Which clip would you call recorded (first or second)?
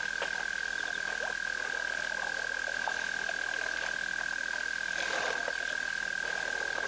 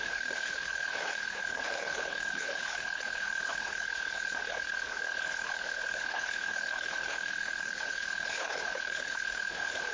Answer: first